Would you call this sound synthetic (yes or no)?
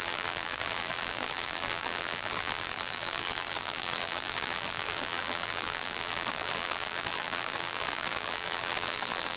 yes